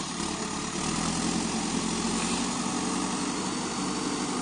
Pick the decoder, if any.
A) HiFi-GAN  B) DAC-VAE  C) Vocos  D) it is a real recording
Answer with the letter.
D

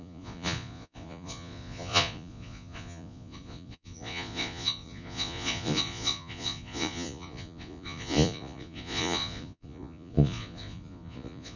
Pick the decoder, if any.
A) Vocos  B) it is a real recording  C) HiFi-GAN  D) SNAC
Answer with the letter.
A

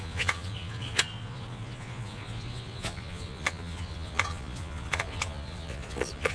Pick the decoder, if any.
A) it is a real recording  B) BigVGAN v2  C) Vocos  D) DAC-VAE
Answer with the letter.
C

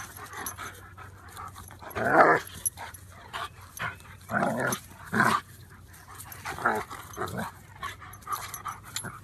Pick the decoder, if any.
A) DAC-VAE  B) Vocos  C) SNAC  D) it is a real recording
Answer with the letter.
D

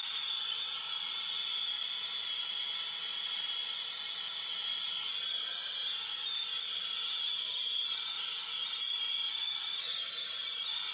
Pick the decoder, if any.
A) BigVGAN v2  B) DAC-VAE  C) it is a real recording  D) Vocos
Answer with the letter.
C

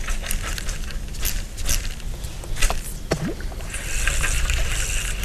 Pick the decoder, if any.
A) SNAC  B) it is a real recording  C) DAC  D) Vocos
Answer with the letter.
B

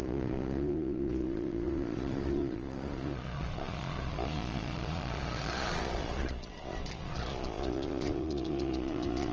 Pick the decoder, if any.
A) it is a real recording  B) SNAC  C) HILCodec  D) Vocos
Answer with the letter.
D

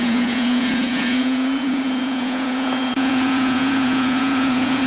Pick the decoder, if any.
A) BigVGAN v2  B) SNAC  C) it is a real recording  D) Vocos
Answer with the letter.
D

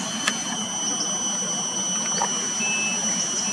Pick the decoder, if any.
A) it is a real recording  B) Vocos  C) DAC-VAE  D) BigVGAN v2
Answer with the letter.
A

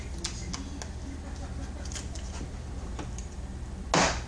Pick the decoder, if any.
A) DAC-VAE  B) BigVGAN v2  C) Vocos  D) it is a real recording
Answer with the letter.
D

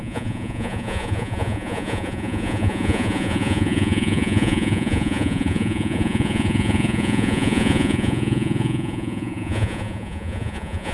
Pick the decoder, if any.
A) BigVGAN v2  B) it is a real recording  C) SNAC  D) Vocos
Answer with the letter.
D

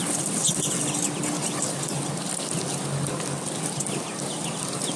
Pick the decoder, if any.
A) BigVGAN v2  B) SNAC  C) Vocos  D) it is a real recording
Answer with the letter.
D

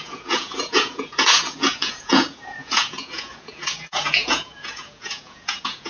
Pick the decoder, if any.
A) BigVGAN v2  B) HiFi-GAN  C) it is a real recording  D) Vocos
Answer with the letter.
D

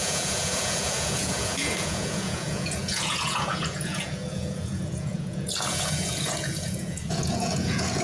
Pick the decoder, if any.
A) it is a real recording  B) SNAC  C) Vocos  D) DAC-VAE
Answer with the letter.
C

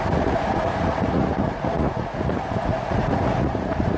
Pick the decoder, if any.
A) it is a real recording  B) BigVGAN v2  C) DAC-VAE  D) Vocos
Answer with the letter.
D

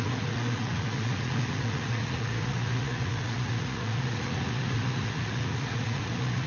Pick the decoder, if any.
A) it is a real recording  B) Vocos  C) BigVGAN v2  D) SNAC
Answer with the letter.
B